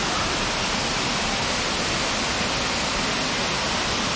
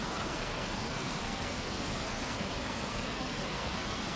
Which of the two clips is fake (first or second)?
second